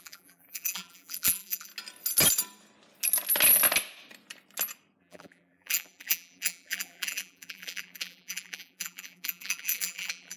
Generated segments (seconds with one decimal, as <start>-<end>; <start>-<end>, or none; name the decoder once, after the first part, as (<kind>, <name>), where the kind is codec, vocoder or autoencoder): 0.0-1.7 (vocoder, BigVGAN v2); 5.0-10.4